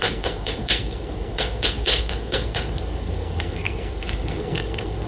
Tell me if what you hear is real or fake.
fake